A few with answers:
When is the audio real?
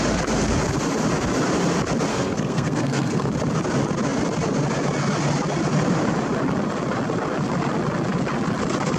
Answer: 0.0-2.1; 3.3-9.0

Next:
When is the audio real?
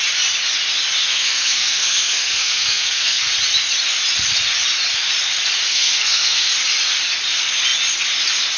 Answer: 0.0-1.1; 3.3-5.7; 6.5-8.6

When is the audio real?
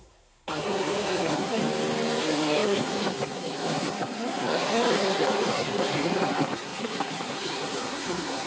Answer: 1.6-2.2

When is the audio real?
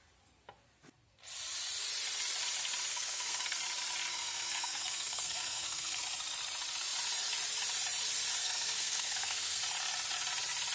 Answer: 0.0-2.9; 3.6-4.1; 6.0-8.4; 9.6-10.7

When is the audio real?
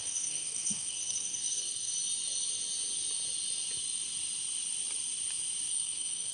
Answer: 1.9-5.7